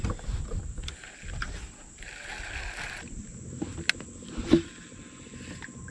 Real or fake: real